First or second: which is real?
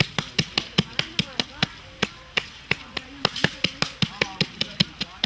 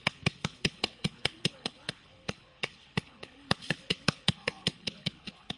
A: first